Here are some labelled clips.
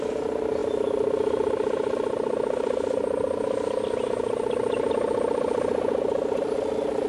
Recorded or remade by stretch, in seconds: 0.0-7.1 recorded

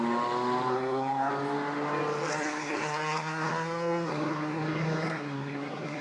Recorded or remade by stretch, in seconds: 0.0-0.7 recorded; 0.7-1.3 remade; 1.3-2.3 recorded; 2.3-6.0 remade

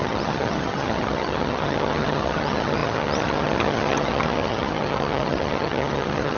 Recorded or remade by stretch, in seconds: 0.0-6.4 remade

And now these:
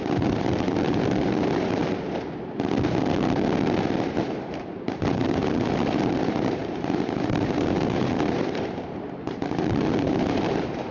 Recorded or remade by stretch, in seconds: 0.0-1.8 remade; 1.8-4.2 recorded; 4.2-10.9 remade

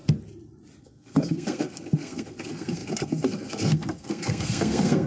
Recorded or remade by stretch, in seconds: 0.0-0.8 recorded; 0.8-5.1 remade

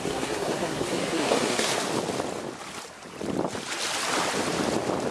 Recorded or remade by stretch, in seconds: 0.0-1.7 remade; 1.7-5.1 recorded

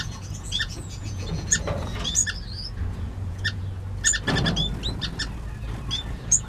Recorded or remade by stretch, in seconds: 0.0-2.2 remade; 2.2-2.9 recorded; 2.9-3.6 remade; 3.6-6.1 recorded; 6.1-6.5 remade

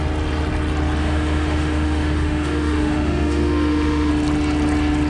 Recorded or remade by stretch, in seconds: 0.0-1.0 recorded; 1.0-4.1 remade; 4.1-5.1 recorded